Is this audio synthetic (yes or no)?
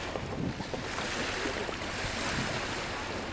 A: no